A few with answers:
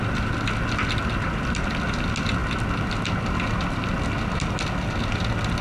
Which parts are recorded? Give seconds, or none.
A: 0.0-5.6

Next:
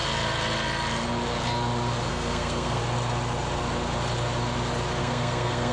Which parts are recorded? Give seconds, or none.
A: 0.0-2.1; 2.8-5.0

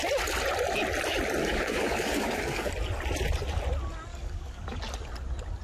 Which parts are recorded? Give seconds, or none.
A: 0.0-1.4; 2.7-4.1; 4.8-5.6

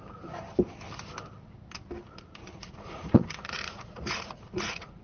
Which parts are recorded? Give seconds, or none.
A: 0.0-2.4

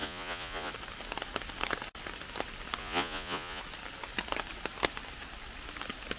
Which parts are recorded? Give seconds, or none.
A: 0.7-2.8; 3.6-6.2